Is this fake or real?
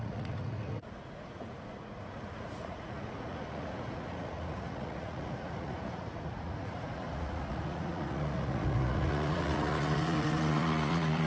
fake